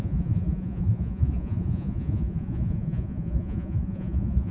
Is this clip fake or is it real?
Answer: fake